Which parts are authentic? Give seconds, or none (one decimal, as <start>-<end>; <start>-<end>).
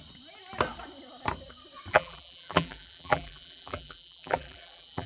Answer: 0.0-1.9